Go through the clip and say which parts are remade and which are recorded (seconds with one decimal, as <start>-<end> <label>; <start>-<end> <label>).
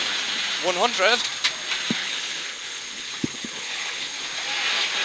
0.0-2.0 recorded; 2.0-4.2 remade; 4.2-5.0 recorded